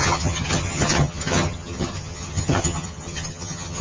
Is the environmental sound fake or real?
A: fake